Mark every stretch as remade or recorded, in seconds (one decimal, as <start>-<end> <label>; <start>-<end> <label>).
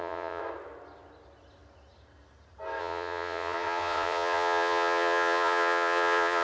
0.0-0.4 remade; 0.4-2.8 recorded; 2.8-6.4 remade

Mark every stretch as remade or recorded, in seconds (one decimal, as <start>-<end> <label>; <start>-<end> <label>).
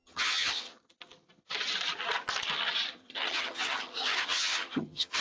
0.0-0.7 remade; 0.7-2.9 recorded; 2.9-5.2 remade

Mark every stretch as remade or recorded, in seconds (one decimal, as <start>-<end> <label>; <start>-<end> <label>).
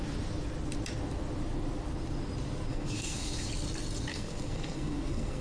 0.0-2.7 recorded; 2.7-3.5 remade; 3.5-4.1 recorded; 4.1-5.4 remade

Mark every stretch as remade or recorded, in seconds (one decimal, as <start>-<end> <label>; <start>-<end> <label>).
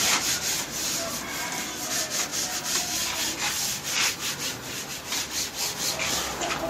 0.0-6.7 recorded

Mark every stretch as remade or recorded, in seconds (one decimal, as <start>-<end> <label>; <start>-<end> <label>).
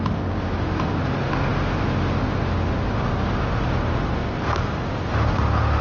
0.0-5.8 recorded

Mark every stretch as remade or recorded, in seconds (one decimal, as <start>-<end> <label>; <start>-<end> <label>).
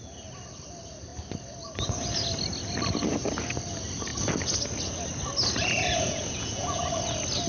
0.0-5.6 recorded; 5.6-6.8 remade; 6.8-7.5 recorded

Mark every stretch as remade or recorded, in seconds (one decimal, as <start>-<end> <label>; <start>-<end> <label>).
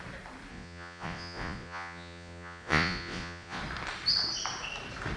0.0-0.5 recorded; 0.5-3.6 remade; 3.6-5.2 recorded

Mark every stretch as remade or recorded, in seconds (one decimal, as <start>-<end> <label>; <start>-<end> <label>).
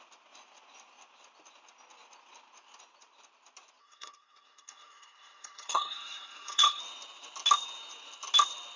0.0-3.8 recorded; 3.8-6.8 remade; 6.8-8.8 recorded